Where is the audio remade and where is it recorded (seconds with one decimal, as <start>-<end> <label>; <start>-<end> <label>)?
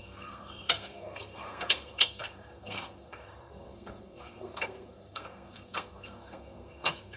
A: 0.0-7.2 remade